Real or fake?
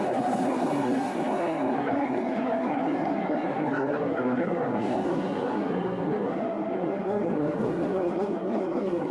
fake